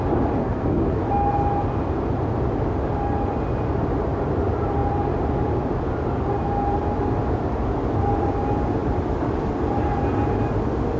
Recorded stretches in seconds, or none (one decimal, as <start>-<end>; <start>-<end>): 0.0-0.4; 1.0-11.0